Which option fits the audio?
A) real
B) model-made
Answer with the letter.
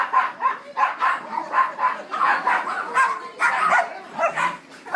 A